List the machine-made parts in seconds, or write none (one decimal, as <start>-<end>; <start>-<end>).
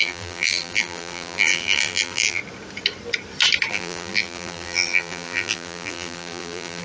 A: 0.0-2.4; 3.7-6.8